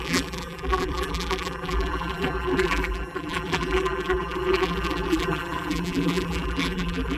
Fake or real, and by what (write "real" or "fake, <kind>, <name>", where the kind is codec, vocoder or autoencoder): fake, vocoder, BigVGAN v2